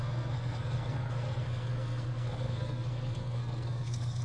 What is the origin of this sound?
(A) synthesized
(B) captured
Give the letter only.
A